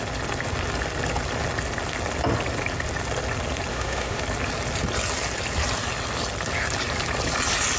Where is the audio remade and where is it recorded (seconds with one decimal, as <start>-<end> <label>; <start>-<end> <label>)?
0.0-3.7 recorded; 3.7-4.2 remade; 4.2-7.8 recorded